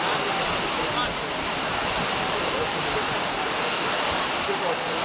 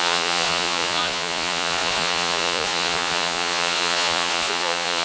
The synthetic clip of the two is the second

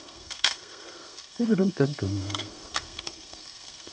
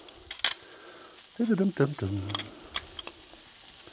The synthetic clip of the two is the first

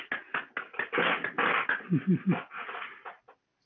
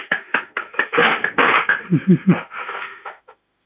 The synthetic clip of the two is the second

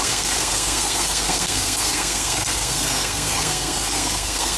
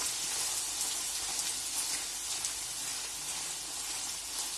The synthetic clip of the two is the first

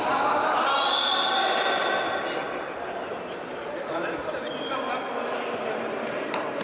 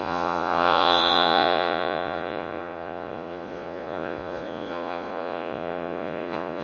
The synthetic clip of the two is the second